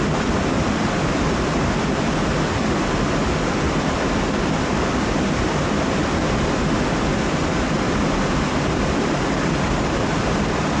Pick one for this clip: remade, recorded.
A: recorded